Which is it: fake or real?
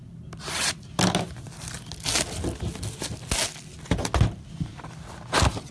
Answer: real